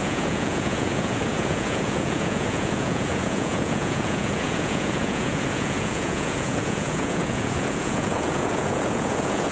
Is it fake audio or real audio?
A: fake